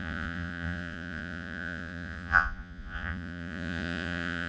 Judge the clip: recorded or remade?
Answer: remade